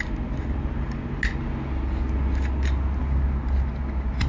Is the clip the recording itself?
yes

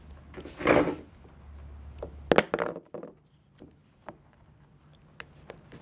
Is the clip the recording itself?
yes